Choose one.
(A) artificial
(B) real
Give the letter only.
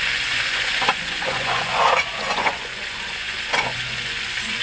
A